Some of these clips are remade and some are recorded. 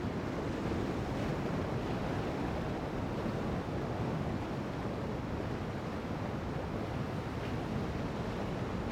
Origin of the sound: recorded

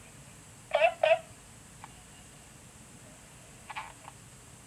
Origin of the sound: recorded